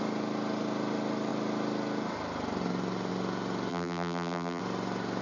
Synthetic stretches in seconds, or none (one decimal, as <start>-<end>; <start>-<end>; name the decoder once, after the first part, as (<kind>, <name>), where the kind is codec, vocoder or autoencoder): 3.7-4.6 (vocoder, BigVGAN v2)